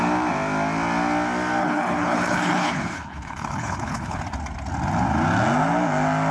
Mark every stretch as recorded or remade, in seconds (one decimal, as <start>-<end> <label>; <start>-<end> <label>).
0.0-1.6 recorded; 1.6-4.2 remade; 4.2-6.3 recorded